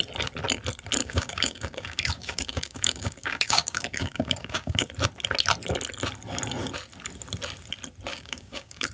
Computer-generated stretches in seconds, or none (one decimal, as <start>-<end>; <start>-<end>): 1.0-4.9; 8.1-8.9